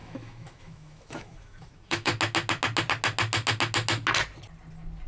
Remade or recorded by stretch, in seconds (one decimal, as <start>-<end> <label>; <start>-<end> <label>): 0.0-2.1 remade; 2.1-5.1 recorded